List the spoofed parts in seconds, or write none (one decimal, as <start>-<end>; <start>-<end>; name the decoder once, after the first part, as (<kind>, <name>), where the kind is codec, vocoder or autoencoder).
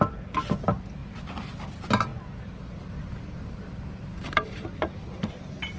4.1-5.3 (vocoder, BigVGAN v2)